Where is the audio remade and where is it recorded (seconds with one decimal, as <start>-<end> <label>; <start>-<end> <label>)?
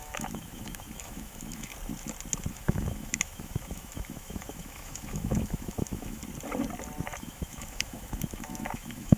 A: 0.0-1.7 remade; 1.7-2.5 recorded; 2.5-6.2 remade; 6.2-7.2 recorded; 7.2-9.2 remade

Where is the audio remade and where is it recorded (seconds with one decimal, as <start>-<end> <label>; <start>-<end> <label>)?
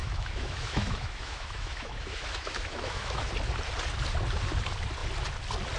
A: 0.0-3.3 remade; 3.3-5.8 recorded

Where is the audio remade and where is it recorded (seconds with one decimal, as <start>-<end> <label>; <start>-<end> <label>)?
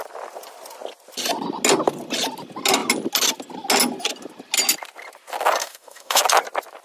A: 0.0-5.6 recorded; 5.6-6.2 remade; 6.2-6.8 recorded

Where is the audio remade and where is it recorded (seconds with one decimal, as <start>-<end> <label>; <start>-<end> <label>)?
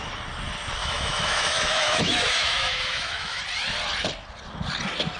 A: 0.0-0.8 recorded; 0.8-3.4 remade; 3.4-5.2 recorded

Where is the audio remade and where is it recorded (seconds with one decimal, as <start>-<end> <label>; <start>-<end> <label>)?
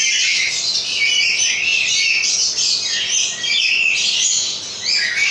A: 0.0-5.3 recorded